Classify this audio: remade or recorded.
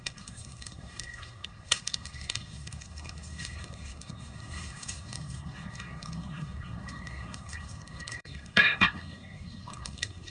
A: remade